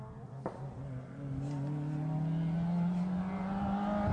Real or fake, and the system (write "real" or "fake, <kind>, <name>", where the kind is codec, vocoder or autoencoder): real